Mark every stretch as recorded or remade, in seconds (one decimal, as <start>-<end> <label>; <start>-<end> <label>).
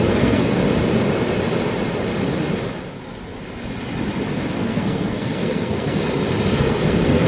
0.0-0.6 remade; 0.6-4.6 recorded; 4.6-6.0 remade; 6.0-6.6 recorded; 6.6-7.3 remade